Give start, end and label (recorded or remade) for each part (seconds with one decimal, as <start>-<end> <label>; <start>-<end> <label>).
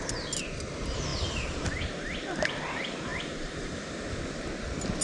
0.0-3.1 recorded; 3.1-3.8 remade; 3.8-5.0 recorded